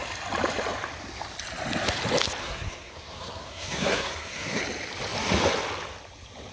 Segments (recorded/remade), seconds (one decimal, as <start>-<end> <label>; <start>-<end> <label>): 0.0-2.4 recorded; 2.4-4.6 remade; 4.6-6.5 recorded